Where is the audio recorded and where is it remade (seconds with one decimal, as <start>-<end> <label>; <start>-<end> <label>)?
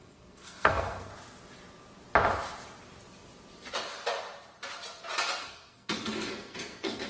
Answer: 0.0-1.1 remade; 1.1-5.4 recorded; 5.4-7.1 remade